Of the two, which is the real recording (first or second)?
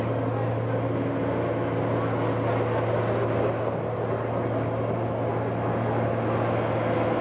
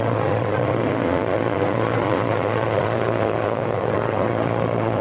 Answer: first